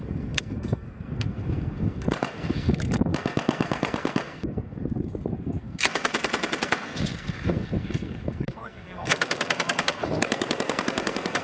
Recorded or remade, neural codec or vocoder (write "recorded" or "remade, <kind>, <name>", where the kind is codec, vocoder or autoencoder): remade, codec, SNAC